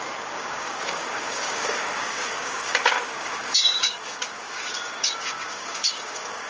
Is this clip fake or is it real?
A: fake